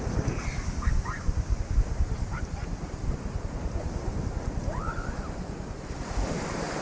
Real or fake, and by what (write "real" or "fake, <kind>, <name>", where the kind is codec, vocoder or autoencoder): real